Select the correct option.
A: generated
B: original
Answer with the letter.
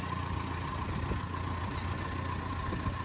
B